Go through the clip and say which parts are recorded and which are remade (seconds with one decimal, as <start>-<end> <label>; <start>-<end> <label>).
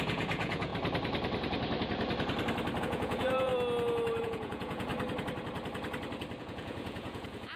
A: 0.0-0.7 remade; 0.7-2.8 recorded; 2.8-3.5 remade; 3.5-4.2 recorded; 4.2-4.9 remade; 4.9-6.4 recorded; 6.4-7.6 remade